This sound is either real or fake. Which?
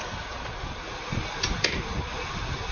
real